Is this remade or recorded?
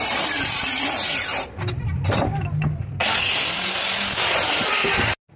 recorded